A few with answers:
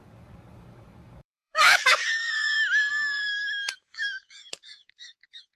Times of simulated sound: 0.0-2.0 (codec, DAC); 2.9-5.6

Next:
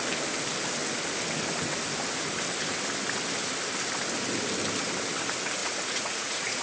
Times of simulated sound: 5.6-6.6 (vocoder, Vocos)